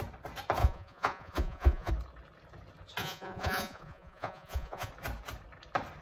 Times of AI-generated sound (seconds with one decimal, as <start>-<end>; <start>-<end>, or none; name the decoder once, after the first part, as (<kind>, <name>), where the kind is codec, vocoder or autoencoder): 0.6-1.9 (vocoder, Vocos); 3.0-4.9